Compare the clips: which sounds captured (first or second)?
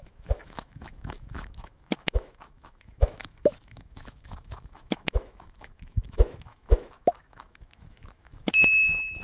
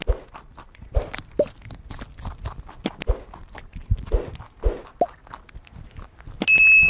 second